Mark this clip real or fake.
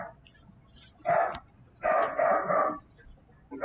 real